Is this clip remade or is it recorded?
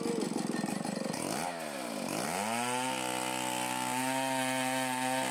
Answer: recorded